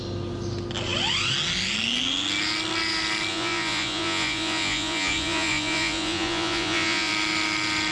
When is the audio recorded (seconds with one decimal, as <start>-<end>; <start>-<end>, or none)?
0.0-3.3; 7.1-7.9